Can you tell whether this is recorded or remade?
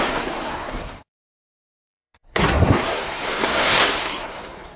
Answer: remade